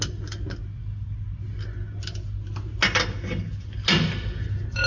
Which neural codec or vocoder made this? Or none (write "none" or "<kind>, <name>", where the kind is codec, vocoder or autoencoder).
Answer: none